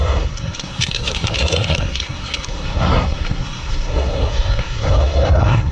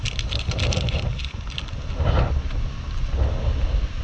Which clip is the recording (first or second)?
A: second